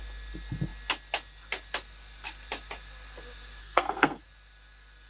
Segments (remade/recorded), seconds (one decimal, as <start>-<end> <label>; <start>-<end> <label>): 0.0-3.6 recorded; 3.6-4.2 remade; 4.2-5.1 recorded